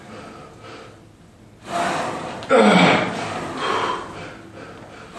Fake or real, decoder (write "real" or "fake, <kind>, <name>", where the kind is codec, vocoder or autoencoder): real